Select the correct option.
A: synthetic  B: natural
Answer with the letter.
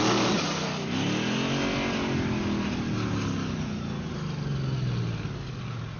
B